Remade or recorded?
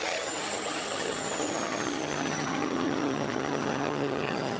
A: remade